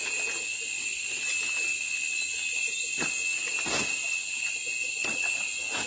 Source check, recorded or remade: recorded